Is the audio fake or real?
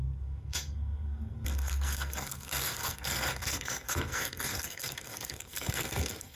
fake